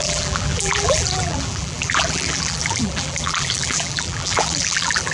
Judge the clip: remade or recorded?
remade